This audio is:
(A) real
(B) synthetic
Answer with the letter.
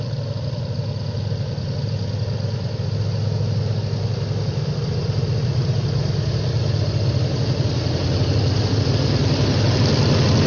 A